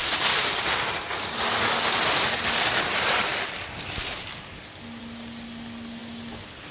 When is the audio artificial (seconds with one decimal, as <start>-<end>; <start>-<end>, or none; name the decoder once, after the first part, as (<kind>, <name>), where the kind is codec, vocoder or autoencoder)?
none